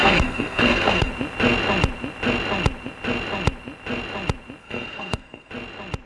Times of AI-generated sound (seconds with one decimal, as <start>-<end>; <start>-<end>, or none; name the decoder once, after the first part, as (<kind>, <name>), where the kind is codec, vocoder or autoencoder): 0.0-1.1 (codec, SNAC); 4.6-5.5